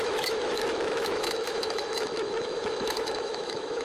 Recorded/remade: remade